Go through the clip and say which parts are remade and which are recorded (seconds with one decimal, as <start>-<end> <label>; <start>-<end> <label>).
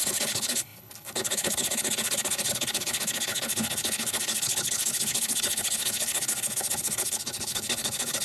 0.0-8.2 remade